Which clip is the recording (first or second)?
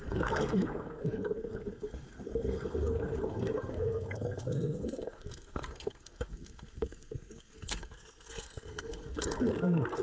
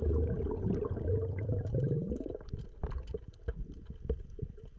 second